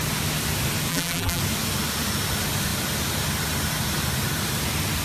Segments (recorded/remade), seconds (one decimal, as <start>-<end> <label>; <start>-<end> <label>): 0.0-0.9 recorded; 0.9-1.4 remade; 1.4-5.0 recorded